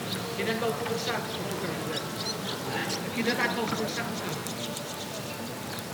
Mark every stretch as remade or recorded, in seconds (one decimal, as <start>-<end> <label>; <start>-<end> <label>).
0.0-2.8 recorded; 2.8-3.7 remade; 3.7-5.9 recorded